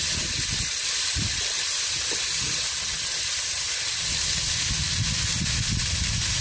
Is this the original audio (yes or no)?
yes